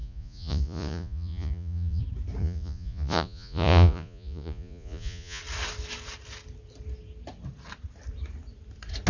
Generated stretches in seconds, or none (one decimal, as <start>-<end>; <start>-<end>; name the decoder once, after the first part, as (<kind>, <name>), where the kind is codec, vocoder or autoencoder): 0.0-2.0 (vocoder, Vocos); 2.4-5.4